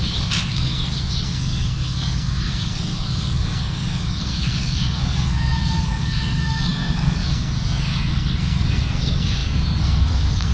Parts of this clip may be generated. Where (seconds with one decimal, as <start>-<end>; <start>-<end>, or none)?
0.0-10.5